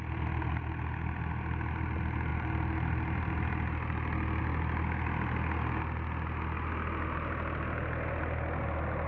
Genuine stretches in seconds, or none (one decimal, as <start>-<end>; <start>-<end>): 0.0-9.1